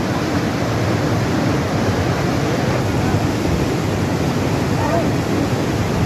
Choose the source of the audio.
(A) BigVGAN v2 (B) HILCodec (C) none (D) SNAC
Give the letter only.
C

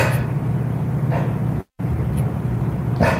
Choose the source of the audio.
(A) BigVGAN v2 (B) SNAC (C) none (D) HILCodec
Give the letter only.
A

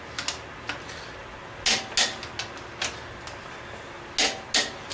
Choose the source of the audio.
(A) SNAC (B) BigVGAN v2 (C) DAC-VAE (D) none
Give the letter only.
D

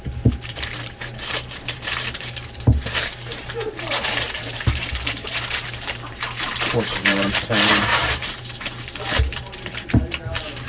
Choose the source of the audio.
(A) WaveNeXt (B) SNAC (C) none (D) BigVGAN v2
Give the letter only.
D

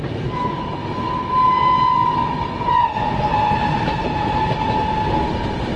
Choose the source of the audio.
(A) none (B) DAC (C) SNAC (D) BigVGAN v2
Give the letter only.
A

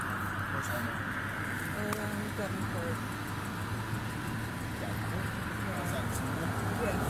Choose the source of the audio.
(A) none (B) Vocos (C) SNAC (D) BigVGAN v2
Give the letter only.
A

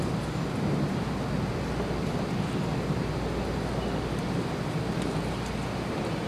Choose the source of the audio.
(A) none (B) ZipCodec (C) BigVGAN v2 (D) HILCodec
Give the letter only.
A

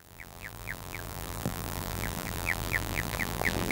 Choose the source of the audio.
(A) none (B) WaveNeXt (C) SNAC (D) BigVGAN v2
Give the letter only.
D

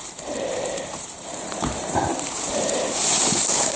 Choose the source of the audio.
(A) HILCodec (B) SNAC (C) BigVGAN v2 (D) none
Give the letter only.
C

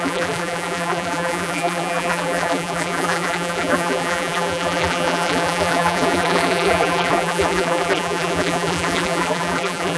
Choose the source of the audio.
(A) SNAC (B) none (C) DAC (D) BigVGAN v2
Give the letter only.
D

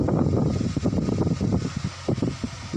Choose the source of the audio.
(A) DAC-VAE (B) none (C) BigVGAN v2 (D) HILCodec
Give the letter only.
B